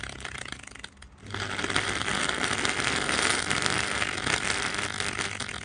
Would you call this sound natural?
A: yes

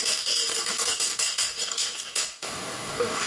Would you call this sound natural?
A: no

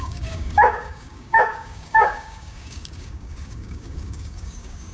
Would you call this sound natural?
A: no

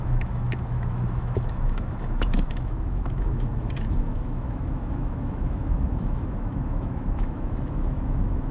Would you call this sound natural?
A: no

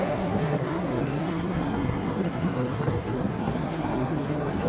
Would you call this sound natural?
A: no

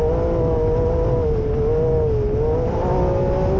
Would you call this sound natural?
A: yes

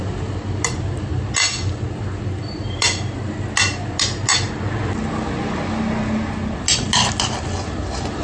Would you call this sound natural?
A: yes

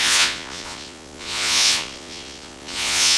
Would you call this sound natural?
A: no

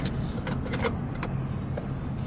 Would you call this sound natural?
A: yes